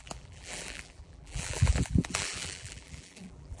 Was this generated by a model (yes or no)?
yes